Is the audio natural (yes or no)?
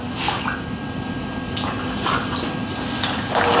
yes